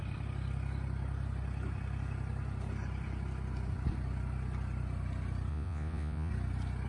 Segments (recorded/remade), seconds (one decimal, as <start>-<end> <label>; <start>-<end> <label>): 0.0-5.5 recorded; 5.5-6.3 remade; 6.3-6.9 recorded